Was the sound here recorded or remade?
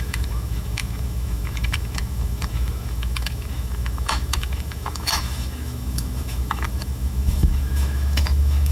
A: remade